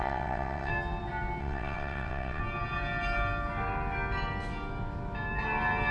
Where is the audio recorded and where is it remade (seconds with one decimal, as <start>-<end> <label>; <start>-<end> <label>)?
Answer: 0.0-0.7 remade; 0.7-1.4 recorded; 1.4-2.4 remade; 2.4-5.9 recorded